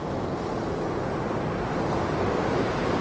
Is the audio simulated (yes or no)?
no